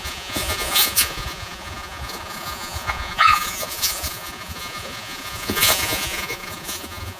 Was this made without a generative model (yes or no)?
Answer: no